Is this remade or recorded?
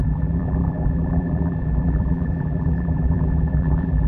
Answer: remade